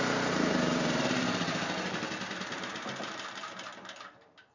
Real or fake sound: fake